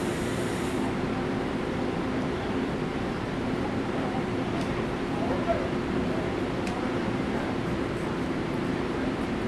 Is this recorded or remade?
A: remade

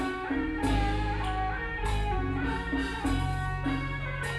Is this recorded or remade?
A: recorded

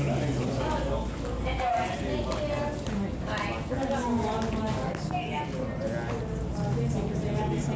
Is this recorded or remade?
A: recorded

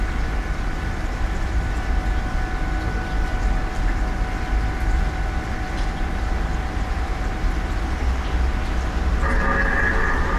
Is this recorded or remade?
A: recorded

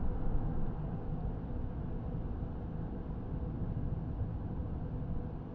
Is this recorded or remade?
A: recorded